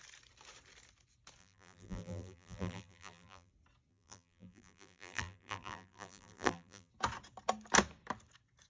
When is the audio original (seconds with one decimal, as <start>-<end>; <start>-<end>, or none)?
0.0-1.4; 3.5-3.9; 6.9-8.7

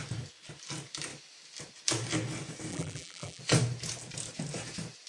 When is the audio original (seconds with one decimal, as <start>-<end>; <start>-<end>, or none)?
0.0-2.7; 3.4-5.1

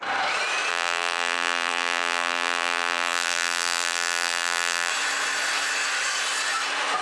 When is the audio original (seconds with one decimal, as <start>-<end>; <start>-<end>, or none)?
0.0-0.7; 4.9-7.0